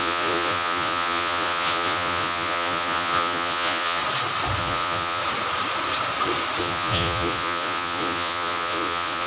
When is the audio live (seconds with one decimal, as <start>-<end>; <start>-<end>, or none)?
4.0-4.6; 5.2-6.6